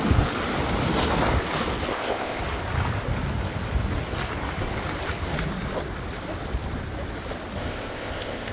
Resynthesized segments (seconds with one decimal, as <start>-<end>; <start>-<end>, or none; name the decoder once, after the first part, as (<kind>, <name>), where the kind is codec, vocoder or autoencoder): 1.9-2.4 (codec, ZipCodec); 7.6-8.5